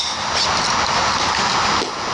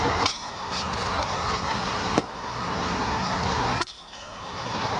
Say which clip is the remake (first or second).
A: second